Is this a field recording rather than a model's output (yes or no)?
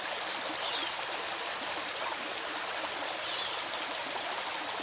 yes